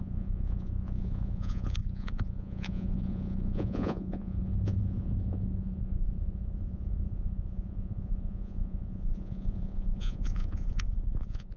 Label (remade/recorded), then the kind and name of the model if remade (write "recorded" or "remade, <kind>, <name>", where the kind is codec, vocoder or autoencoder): remade, vocoder, Vocos